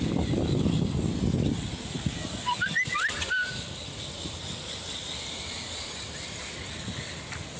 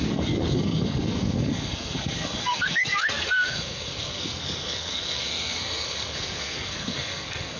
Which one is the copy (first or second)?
second